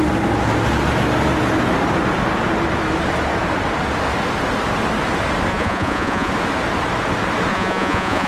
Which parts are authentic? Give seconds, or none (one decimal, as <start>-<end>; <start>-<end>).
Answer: 0.0-5.5; 6.3-7.5